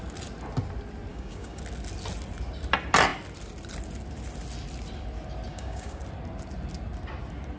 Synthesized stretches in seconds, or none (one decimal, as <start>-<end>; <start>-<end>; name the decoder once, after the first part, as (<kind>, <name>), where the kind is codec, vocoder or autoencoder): 1.1-1.6 (codec, DAC); 5.5-6.0